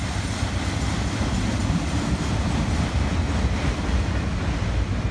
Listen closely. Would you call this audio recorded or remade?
recorded